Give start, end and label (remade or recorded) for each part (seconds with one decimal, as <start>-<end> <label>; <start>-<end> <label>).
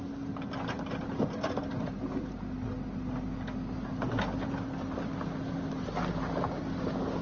0.0-7.2 recorded